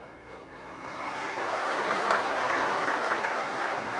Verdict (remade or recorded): remade